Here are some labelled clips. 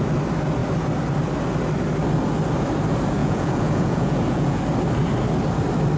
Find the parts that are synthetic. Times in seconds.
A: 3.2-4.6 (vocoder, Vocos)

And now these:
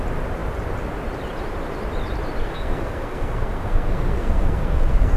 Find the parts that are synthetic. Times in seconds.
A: 2.4-5.2 (codec, SNAC)

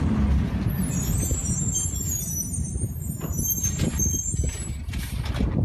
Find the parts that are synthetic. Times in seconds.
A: 1.4-4.8 (vocoder, BigVGAN v2)

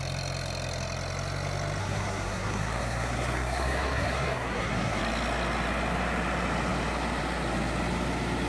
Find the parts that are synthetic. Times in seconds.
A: 1.8-5.0 (codec, SNAC)

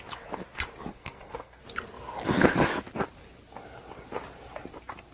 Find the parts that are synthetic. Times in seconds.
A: 0.9-1.6 (codec, SNAC)